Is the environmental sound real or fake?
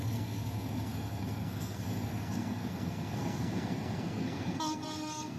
fake